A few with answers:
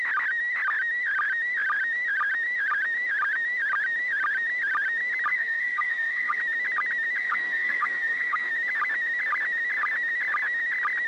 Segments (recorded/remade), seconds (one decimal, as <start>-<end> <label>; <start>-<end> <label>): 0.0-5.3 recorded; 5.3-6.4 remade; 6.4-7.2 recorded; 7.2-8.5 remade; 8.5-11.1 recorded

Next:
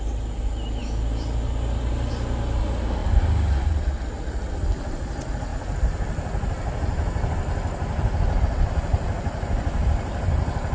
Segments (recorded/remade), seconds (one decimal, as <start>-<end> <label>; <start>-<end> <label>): 0.0-8.9 recorded; 8.9-9.5 remade; 9.5-10.7 recorded

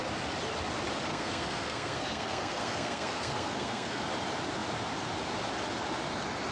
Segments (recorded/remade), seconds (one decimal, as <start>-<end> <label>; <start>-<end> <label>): 0.0-1.1 recorded; 1.1-4.0 remade; 4.0-6.5 recorded

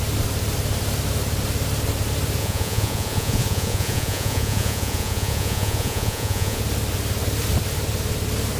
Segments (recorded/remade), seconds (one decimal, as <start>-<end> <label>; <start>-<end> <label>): 0.0-2.4 recorded; 2.4-6.6 remade; 6.6-8.6 recorded

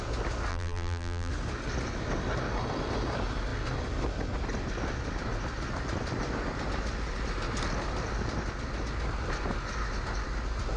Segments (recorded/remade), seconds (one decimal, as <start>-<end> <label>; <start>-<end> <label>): 0.0-0.5 recorded; 0.5-1.3 remade; 1.3-10.8 recorded